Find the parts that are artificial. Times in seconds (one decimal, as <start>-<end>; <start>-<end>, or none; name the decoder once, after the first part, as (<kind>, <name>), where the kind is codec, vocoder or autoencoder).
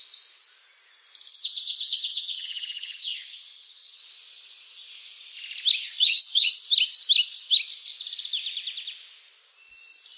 1.3-4.0 (vocoder, HiFi-GAN); 5.9-6.5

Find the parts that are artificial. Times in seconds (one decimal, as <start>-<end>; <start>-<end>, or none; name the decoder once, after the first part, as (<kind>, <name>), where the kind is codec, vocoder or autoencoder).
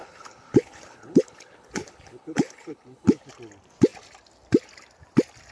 0.0-3.3 (codec, HILCodec)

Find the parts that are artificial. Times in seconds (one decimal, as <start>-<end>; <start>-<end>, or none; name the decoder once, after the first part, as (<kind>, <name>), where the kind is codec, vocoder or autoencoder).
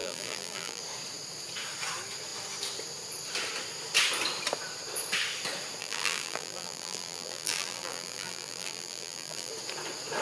0.0-0.8 (vocoder, BigVGAN v2); 5.8-9.5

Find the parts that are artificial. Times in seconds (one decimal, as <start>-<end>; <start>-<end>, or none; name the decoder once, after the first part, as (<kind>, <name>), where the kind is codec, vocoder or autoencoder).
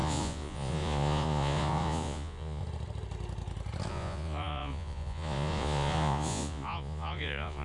0.0-2.6 (vocoder, Vocos); 3.9-7.6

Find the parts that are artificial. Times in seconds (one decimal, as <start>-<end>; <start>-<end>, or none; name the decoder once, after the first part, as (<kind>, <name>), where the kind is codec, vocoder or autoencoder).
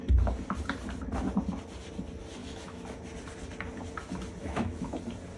2.4-3.0 (autoencoder, DAC-VAE); 4.4-5.0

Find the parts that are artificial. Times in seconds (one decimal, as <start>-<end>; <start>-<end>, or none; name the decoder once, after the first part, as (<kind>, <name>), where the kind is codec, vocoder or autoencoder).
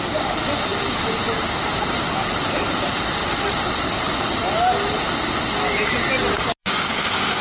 6.6-7.4 (codec, DAC)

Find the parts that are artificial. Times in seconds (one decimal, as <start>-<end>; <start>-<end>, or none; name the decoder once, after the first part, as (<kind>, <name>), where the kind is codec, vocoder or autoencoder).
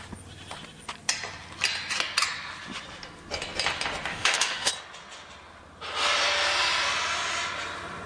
4.1-4.7 (autoencoder, DAC-VAE)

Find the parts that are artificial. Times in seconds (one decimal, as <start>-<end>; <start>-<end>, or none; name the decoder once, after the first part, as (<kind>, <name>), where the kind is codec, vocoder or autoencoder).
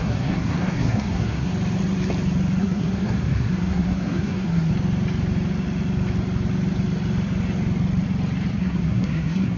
0.0-1.5 (codec, SNAC); 2.6-4.7; 8.6-9.6